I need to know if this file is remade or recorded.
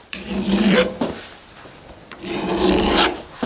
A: remade